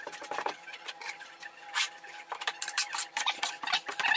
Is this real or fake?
fake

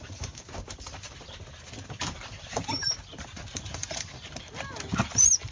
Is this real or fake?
fake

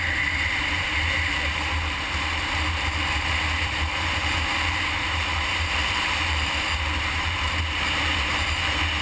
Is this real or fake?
fake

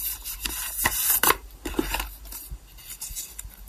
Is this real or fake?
fake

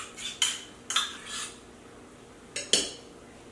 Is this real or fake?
real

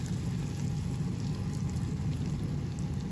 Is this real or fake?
real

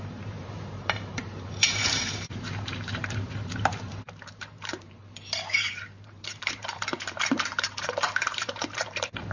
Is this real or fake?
fake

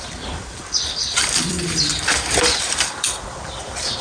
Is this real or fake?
fake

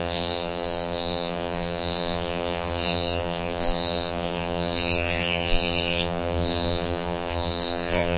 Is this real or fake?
fake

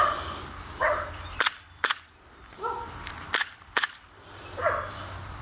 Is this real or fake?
fake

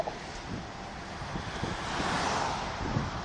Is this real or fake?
fake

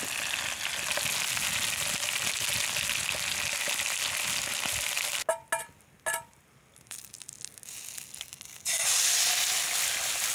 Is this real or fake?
real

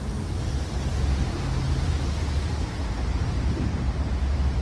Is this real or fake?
real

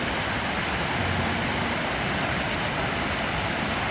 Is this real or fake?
fake